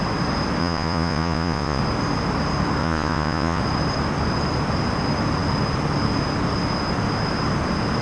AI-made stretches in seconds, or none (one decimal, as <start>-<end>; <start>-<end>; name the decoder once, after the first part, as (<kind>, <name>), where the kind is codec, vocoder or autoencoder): 0.6-1.8 (vocoder, Vocos); 2.8-3.6